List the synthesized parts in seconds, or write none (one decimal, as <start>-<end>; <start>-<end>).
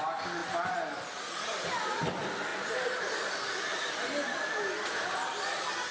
0.4-1.2